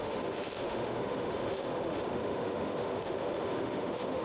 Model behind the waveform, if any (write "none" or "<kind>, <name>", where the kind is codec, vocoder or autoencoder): autoencoder, DAC-VAE